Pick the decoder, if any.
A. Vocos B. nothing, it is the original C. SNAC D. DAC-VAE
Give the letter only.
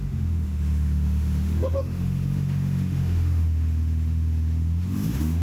D